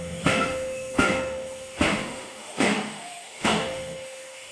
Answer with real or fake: fake